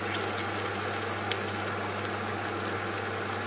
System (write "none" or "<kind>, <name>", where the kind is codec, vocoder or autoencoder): vocoder, BigVGAN v2